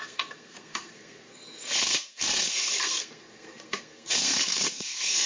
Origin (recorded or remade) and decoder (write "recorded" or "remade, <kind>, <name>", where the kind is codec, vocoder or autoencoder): remade, codec, SNAC